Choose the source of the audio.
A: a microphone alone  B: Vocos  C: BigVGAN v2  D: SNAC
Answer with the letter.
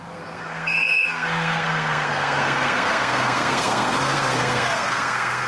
D